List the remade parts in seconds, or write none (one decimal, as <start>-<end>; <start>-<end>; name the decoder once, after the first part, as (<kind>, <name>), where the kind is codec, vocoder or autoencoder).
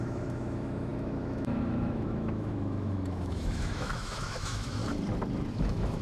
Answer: 0.0-4.8 (autoencoder, DAC-VAE); 5.5-6.0